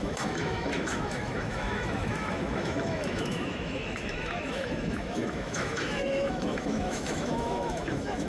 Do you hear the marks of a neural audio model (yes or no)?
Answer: yes